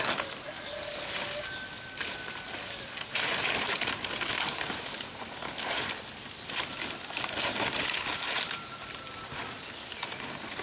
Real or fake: real